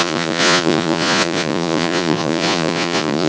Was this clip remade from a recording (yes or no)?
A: yes